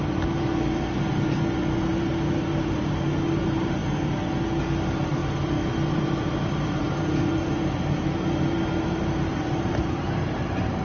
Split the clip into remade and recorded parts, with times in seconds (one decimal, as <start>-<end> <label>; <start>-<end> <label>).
0.0-3.8 remade; 3.8-4.6 recorded; 4.6-10.8 remade